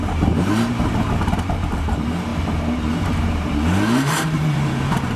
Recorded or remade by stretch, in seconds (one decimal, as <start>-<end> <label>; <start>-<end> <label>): 0.0-5.2 remade